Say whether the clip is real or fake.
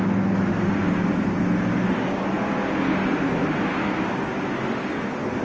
real